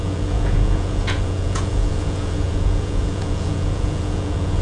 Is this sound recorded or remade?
remade